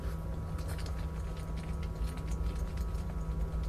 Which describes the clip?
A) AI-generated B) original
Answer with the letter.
B